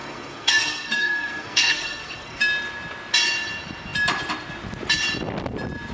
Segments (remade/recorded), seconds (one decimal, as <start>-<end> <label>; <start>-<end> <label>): 0.0-2.4 remade; 2.4-5.9 recorded